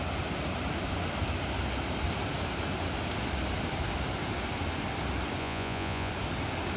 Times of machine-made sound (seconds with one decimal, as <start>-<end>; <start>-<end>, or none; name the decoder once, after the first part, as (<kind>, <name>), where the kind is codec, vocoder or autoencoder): 5.4-6.1 (vocoder, Vocos)